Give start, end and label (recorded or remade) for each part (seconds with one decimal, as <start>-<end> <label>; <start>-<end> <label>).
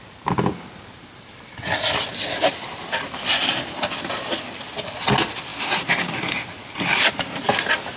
0.0-8.0 recorded